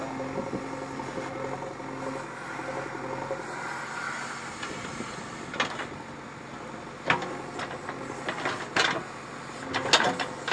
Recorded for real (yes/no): yes